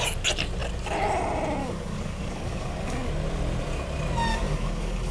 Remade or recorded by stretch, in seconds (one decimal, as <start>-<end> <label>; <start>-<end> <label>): 0.0-1.6 recorded; 1.6-3.1 remade; 3.1-4.3 recorded; 4.3-5.1 remade